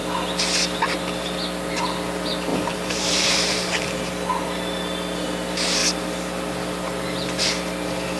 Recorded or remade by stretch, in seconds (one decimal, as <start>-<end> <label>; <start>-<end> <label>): 0.0-2.5 recorded; 2.5-4.0 remade; 4.0-8.2 recorded